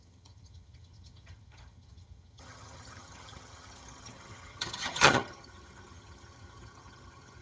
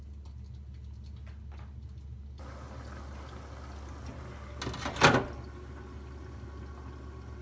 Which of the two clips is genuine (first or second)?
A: second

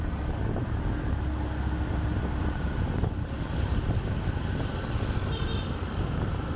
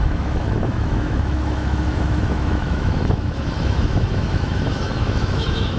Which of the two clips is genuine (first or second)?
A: first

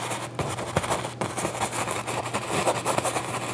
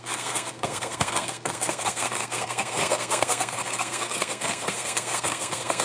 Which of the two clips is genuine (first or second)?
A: first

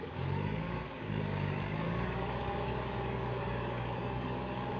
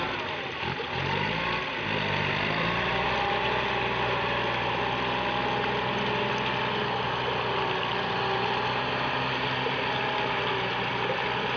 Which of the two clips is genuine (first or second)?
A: second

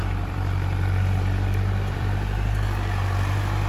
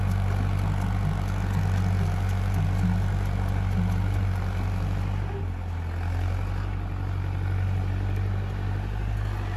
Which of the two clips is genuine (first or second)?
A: second